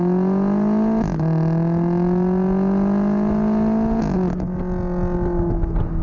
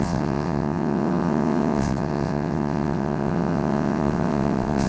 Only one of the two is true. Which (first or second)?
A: first